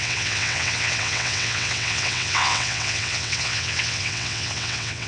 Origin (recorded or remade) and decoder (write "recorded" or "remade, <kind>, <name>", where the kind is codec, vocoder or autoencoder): remade, vocoder, WaveNeXt